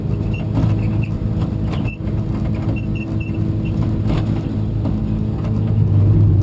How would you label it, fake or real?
real